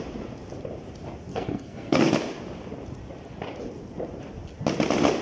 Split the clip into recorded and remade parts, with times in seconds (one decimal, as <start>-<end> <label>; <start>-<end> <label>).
0.0-1.3 recorded; 1.3-2.1 remade; 2.1-5.2 recorded